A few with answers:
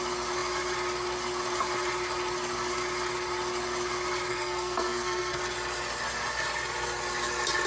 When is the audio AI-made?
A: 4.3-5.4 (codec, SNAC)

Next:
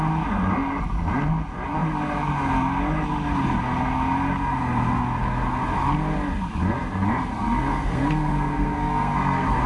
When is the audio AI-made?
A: 7.3-9.7 (codec, SNAC)